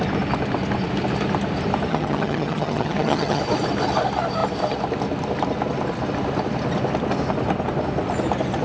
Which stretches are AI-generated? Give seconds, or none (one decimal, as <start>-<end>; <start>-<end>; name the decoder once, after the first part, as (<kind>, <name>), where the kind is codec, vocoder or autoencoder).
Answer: 1.9-3.4 (vocoder, HiFi-GAN)